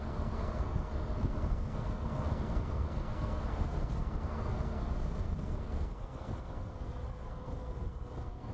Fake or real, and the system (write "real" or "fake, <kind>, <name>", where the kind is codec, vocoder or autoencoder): fake, codec, SNAC